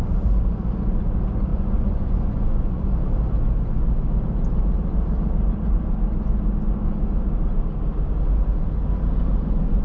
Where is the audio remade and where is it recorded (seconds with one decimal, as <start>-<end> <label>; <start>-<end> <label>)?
0.0-1.5 recorded; 1.5-2.9 remade; 2.9-9.8 recorded